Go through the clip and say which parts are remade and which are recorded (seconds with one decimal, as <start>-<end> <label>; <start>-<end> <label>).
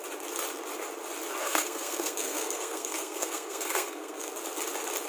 0.0-1.4 recorded; 1.4-4.3 remade; 4.3-5.1 recorded